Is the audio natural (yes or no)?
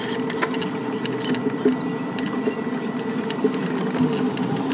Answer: yes